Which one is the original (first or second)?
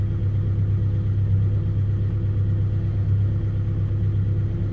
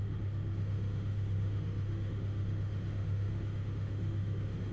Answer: first